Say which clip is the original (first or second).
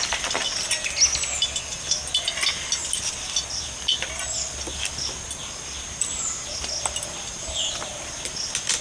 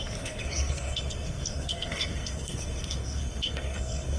first